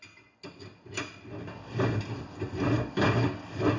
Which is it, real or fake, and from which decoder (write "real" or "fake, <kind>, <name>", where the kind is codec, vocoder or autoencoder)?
real